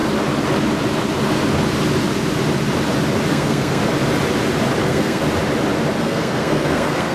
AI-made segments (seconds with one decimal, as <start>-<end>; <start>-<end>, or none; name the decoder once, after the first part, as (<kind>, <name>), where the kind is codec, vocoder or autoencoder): 3.3-3.8 (codec, SNAC); 4.8-5.2; 6.0-7.1